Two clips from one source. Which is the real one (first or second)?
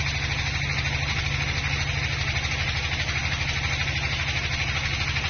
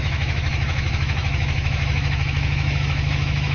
first